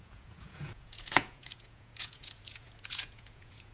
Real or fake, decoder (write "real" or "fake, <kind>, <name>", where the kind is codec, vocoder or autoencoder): fake, vocoder, Vocos